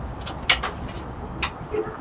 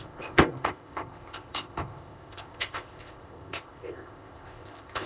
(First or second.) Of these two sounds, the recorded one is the first